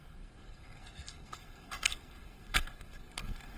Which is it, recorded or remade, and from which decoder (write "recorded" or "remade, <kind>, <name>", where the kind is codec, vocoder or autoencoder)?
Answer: remade, codec, SNAC